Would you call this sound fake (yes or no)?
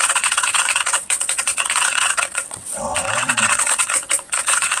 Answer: yes